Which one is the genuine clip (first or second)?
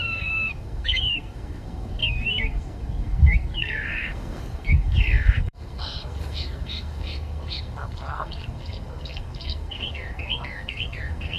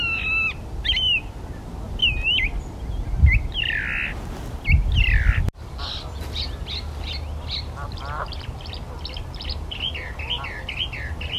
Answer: second